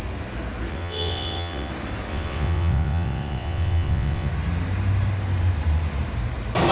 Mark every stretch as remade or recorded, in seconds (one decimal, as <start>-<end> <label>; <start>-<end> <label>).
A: 0.0-0.7 recorded; 0.7-1.7 remade; 1.7-2.1 recorded; 2.1-4.3 remade; 4.3-6.7 recorded